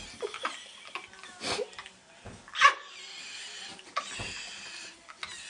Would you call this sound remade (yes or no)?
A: no